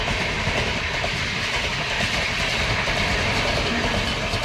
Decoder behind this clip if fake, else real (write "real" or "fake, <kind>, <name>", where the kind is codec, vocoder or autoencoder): fake, vocoder, BigVGAN v2